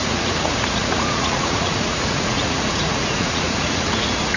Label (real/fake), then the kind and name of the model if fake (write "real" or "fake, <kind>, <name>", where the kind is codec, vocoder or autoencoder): fake, vocoder, Vocos